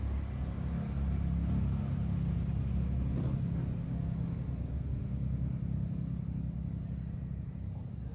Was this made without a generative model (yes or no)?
yes